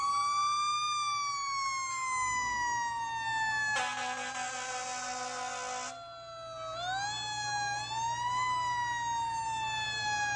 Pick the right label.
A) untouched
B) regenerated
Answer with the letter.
A